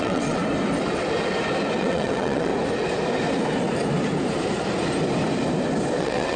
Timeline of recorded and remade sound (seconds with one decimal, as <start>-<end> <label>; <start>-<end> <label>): 0.0-0.4 remade; 0.4-1.8 recorded; 1.8-2.5 remade; 2.5-6.0 recorded; 6.0-6.4 remade